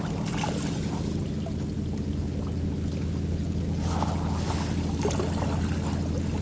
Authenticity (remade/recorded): recorded